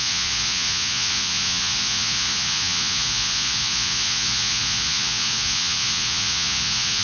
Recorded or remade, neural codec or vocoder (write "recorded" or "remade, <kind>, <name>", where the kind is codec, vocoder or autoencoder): remade, vocoder, Vocos